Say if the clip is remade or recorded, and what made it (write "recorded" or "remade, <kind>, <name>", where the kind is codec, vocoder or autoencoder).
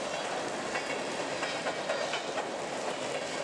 recorded